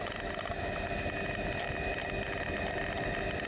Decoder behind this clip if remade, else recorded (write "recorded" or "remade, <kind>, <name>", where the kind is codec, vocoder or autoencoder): recorded